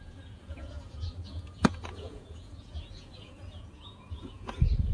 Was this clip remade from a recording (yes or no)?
yes